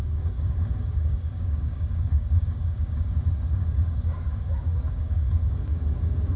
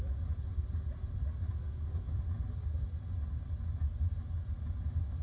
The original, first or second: second